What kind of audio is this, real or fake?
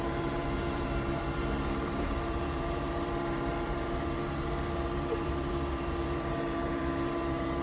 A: fake